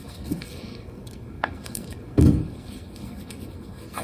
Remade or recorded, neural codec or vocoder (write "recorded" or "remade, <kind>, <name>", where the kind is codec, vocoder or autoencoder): remade, codec, SNAC